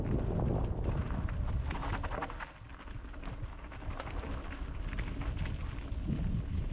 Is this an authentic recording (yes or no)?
yes